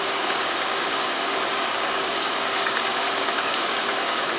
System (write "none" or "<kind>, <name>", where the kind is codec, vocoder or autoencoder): codec, DAC